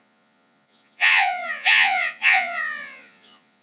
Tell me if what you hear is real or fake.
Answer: fake